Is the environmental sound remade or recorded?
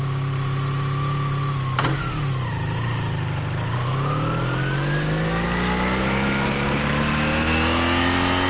recorded